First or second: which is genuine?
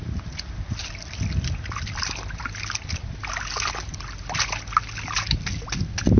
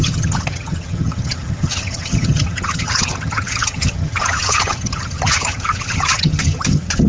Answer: first